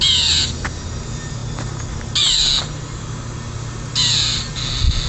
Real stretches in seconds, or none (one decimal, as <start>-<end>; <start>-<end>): 0.0-5.1